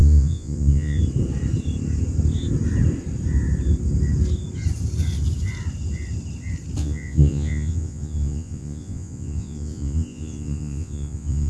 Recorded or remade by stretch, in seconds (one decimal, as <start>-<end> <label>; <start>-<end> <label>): 0.0-1.0 remade; 1.0-6.8 recorded; 6.8-11.5 remade